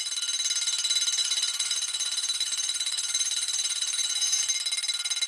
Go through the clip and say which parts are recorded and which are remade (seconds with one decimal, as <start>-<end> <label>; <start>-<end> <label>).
0.0-1.2 recorded; 1.2-4.4 remade; 4.4-5.3 recorded